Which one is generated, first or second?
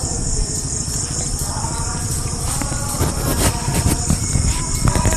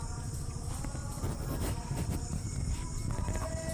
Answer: first